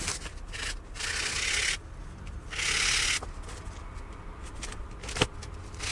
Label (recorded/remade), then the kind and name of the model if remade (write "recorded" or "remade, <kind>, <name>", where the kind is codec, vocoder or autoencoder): recorded